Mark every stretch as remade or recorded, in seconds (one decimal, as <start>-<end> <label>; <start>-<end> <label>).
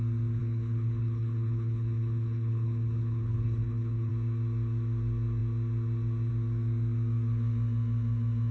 0.0-0.4 recorded; 0.4-4.1 remade; 4.1-8.5 recorded